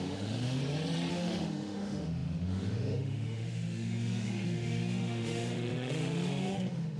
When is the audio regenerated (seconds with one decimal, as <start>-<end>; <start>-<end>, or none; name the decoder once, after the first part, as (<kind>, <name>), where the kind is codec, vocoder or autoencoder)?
0.0-0.6 (autoencoder, DAC-VAE); 1.1-7.0